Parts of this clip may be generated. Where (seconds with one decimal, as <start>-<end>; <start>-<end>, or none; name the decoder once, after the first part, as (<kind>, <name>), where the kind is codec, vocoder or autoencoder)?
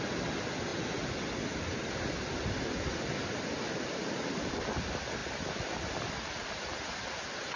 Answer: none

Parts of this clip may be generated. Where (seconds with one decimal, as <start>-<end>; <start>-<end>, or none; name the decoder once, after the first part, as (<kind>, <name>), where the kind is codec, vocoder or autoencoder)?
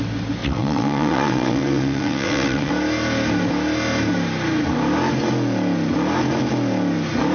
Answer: 0.4-2.7 (vocoder, WaveNeXt)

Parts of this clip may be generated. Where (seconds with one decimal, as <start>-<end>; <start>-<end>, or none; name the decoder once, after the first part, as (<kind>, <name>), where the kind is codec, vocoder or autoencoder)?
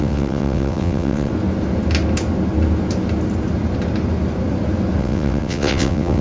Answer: 0.0-1.3 (vocoder, WaveNeXt); 5.0-6.2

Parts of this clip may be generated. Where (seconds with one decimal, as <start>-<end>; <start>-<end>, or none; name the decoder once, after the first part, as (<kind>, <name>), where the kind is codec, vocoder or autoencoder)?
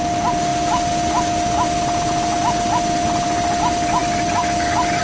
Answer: none